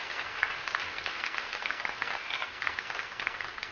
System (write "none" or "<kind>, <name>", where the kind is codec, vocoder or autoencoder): codec, SNAC